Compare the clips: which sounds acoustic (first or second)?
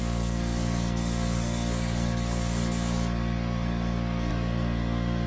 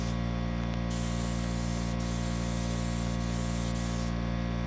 second